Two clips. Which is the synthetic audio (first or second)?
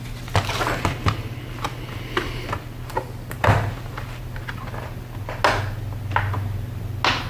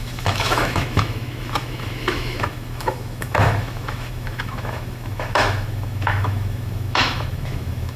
second